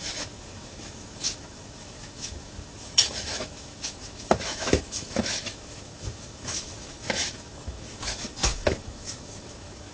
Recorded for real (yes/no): no